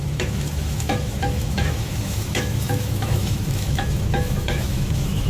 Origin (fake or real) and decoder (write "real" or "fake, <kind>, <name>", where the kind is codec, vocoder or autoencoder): fake, autoencoder, DAC-VAE